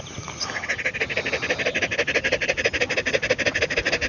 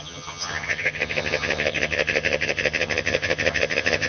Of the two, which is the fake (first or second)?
second